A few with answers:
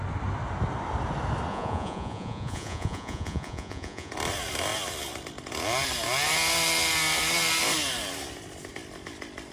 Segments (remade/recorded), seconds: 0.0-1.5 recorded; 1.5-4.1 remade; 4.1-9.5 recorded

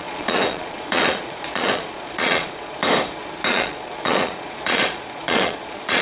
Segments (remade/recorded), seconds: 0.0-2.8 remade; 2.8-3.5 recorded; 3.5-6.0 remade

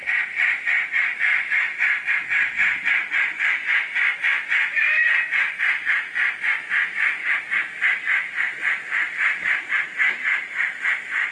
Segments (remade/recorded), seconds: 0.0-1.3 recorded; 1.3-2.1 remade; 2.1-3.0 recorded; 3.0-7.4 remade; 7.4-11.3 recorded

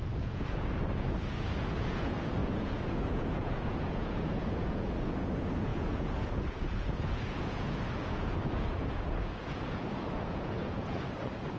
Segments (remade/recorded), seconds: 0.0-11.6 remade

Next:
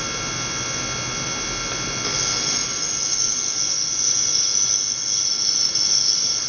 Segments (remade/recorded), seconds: 0.0-6.5 recorded

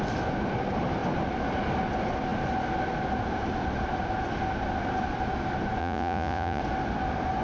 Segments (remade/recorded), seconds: 0.0-5.8 recorded; 5.8-6.6 remade; 6.6-7.4 recorded

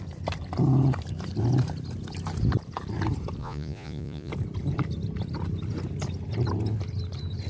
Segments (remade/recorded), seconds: 0.0-3.4 recorded; 3.4-4.3 remade; 4.3-7.5 recorded